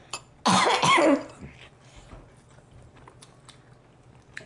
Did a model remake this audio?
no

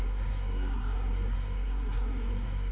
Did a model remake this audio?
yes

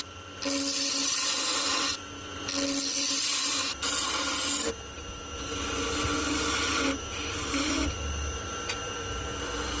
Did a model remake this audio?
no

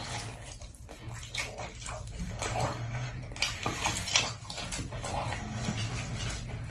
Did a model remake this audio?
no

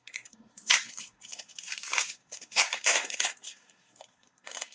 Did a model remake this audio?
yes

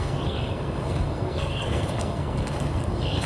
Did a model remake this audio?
yes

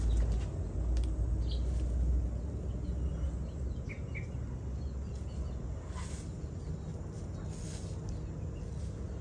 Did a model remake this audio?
no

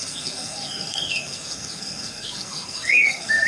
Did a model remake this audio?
yes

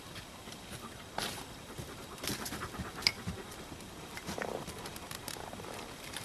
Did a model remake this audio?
no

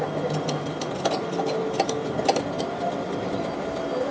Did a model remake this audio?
no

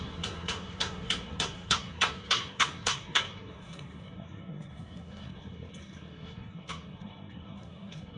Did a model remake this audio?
yes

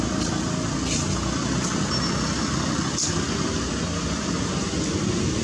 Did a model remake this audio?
no